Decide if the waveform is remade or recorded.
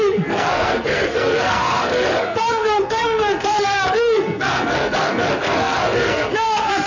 remade